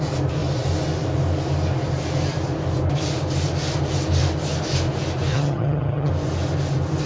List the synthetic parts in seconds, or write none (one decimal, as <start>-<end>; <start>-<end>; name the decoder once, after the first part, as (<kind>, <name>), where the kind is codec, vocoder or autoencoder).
5.3-6.1 (vocoder, HiFi-GAN)